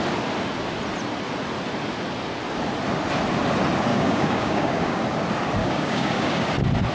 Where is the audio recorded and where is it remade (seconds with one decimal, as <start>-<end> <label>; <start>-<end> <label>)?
0.0-3.9 recorded; 3.9-5.0 remade; 5.0-5.6 recorded; 5.6-6.5 remade; 6.5-6.9 recorded